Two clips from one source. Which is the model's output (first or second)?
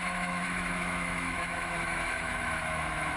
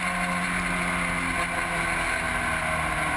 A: first